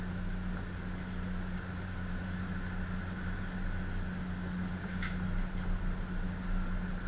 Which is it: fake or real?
real